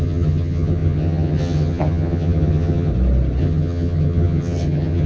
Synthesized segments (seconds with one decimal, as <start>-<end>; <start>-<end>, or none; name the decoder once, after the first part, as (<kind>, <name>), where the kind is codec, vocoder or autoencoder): 0.0-2.9 (vocoder, HiFi-GAN); 3.4-5.1